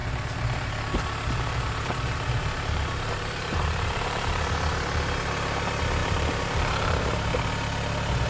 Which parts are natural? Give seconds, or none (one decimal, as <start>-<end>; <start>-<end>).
4.5-6.0; 7.5-8.3